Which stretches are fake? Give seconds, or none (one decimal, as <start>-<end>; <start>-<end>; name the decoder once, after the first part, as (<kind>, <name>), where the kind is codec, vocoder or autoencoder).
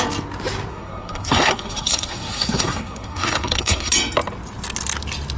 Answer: 0.7-3.9 (codec, SNAC)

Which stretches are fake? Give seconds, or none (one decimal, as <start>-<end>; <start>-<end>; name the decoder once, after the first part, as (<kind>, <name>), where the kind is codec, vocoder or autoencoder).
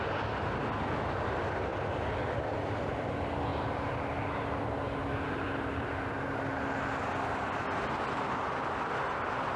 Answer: none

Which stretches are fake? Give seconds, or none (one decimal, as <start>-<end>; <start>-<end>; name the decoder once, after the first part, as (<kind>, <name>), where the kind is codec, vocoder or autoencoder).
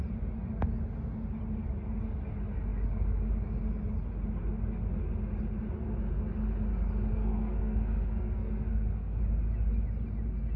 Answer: 7.1-9.2 (codec, SNAC)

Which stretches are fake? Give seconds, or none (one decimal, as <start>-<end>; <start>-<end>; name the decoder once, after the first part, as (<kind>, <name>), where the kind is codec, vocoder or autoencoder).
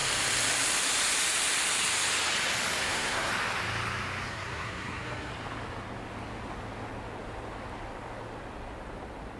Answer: 2.8-3.3 (codec, SNAC); 4.3-5.3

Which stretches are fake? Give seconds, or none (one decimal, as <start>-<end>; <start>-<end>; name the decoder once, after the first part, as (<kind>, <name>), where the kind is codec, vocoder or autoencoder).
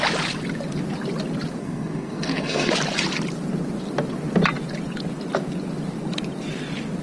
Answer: 1.6-2.7 (codec, SNAC)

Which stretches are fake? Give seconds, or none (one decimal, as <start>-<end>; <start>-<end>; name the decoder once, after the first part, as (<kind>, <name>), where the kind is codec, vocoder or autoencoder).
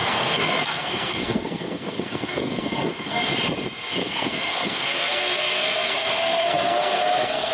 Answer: 0.0-3.2 (codec, SNAC); 4.0-7.5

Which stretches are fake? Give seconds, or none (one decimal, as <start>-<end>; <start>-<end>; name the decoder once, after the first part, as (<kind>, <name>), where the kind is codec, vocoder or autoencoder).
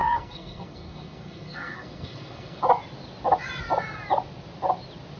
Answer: 0.0-2.6 (codec, SNAC)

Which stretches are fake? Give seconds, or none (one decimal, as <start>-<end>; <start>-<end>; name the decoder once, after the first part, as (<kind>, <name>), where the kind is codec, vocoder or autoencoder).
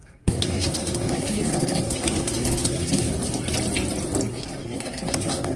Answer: 0.0-3.1 (codec, SNAC); 4.3-5.6